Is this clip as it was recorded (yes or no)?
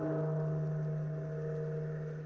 yes